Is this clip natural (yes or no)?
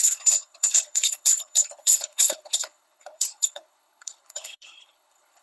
no